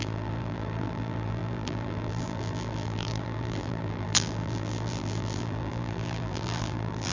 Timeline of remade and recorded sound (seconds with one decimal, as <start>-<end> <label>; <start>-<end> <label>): 0.0-7.1 remade